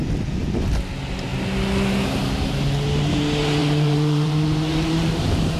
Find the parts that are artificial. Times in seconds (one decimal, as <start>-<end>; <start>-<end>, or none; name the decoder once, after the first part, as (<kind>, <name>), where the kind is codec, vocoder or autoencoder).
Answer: 3.6-5.6 (vocoder, BigVGAN v2)